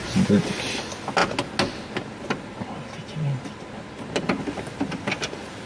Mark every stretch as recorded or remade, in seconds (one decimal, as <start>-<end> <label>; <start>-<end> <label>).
0.0-5.7 recorded